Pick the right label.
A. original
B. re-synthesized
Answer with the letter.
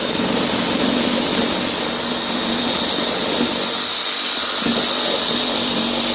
B